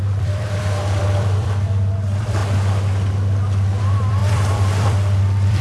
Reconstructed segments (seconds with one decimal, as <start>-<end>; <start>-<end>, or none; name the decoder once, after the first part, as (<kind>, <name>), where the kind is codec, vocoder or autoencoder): 0.0-2.4 (vocoder, BigVGAN v2); 3.8-5.6